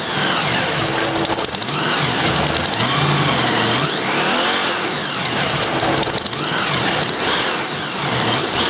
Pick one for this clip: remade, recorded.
recorded